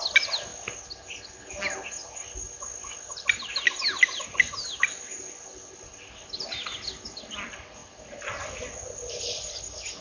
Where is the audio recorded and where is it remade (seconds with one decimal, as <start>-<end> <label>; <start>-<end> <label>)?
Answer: 0.0-10.0 recorded